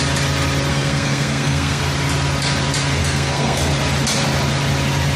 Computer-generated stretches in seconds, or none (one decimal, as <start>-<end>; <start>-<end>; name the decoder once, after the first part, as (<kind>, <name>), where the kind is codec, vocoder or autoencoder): 0.7-1.8 (codec, SNAC); 3.0-3.7